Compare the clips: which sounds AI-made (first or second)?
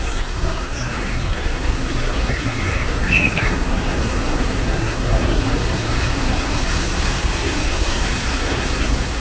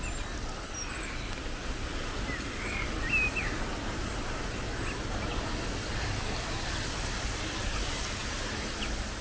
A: first